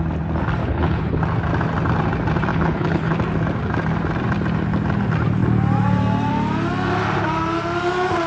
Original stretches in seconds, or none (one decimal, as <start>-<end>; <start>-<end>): 0.0-0.6; 1.2-2.5; 3.1-8.3